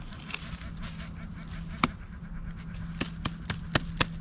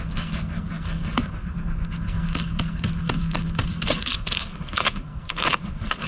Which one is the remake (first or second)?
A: second